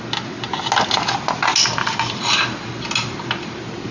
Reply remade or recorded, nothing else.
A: recorded